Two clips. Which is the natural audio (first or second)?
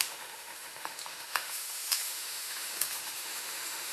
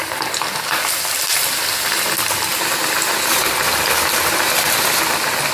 second